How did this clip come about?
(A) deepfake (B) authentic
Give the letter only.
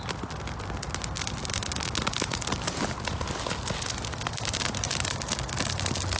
B